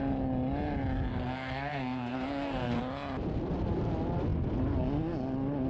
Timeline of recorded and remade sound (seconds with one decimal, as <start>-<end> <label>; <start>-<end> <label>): 0.0-1.1 recorded; 1.1-2.8 remade; 2.8-5.7 recorded